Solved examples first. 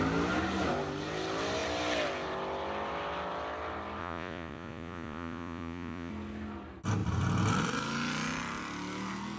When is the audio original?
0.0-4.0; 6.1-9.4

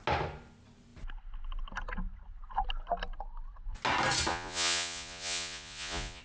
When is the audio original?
0.0-4.3

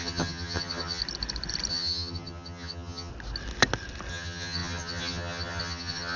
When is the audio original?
1.0-1.7; 3.1-4.1

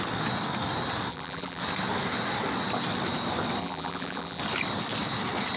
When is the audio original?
0.0-1.1; 1.6-3.6; 4.4-5.6

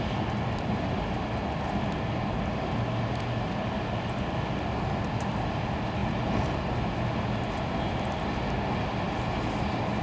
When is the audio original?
0.0-10.0

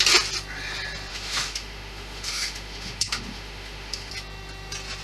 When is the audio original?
0.0-1.1; 4.1-5.0

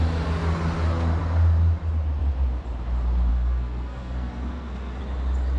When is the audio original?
0.0-3.3; 5.0-5.6